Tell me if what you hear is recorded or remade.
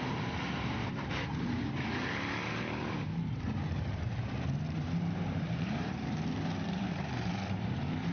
remade